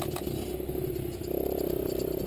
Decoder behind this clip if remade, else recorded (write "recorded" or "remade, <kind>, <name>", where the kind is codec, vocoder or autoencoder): recorded